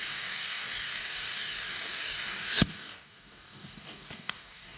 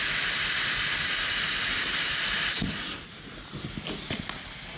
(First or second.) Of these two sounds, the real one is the second